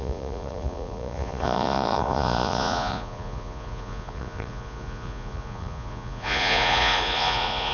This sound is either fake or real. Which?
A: fake